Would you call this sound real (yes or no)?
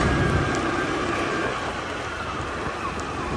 yes